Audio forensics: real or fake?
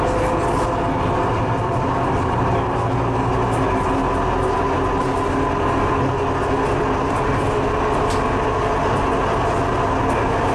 real